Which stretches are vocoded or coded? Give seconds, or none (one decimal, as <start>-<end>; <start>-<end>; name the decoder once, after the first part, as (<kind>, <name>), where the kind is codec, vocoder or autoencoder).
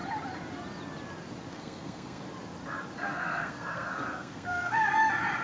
1.5-2.2 (codec, SNAC); 3.0-4.9